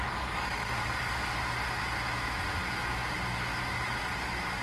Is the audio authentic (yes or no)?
yes